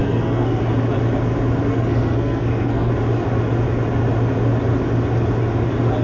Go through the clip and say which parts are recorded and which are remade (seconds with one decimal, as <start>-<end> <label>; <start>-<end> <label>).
0.0-0.6 remade; 0.6-1.7 recorded; 1.7-2.9 remade; 2.9-6.0 recorded